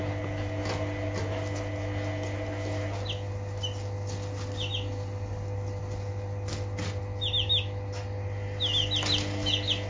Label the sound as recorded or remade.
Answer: recorded